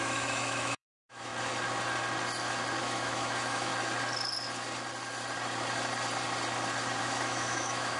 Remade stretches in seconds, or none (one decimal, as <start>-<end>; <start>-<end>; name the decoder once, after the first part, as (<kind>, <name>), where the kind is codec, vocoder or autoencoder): 0.0-1.3 (autoencoder, DAC-VAE); 2.8-3.7; 7.0-8.0

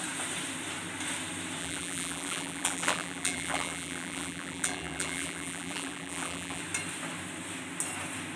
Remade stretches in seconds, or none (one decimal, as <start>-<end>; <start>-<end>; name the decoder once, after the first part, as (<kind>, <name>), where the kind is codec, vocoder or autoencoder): 1.6-6.6 (vocoder, BigVGAN v2)

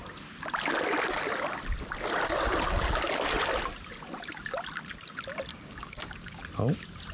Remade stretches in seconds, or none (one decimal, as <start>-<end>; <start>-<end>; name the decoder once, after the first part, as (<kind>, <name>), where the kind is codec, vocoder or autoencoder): 5.5-6.4 (codec, DAC)

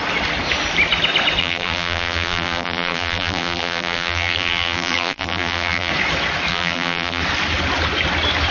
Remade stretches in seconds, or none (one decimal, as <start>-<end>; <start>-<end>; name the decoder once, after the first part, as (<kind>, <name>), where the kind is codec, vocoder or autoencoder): 1.4-5.9 (vocoder, BigVGAN v2); 6.5-7.2